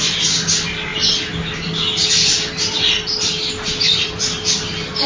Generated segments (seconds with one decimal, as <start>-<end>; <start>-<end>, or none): none